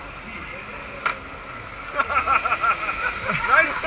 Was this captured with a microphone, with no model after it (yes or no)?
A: yes